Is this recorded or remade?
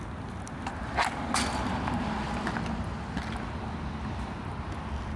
recorded